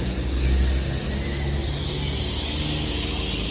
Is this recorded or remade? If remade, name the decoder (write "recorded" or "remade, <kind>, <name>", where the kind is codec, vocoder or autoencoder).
recorded